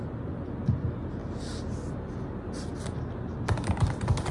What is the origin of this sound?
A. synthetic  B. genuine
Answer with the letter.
B